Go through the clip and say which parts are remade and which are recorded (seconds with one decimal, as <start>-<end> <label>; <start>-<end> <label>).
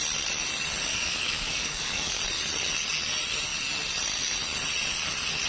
0.0-0.9 recorded; 0.9-2.2 remade; 2.2-5.5 recorded